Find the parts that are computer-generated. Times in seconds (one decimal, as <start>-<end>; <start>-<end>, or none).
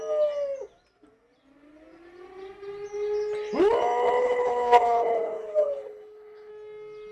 4.2-6.5